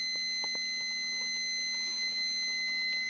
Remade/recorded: recorded